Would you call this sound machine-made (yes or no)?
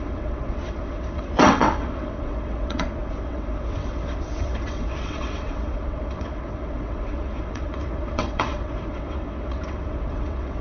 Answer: yes